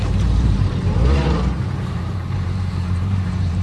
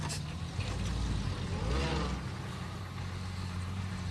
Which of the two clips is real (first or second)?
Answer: second